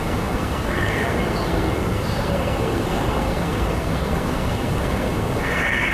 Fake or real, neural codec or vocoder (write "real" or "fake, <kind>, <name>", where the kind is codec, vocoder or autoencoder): fake, codec, SNAC